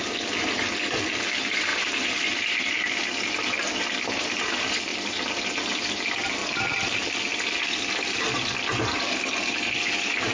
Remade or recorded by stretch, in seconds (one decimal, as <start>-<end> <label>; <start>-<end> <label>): 0.0-0.9 remade; 0.9-1.7 recorded; 1.7-3.1 remade; 3.1-6.4 recorded; 6.4-10.3 remade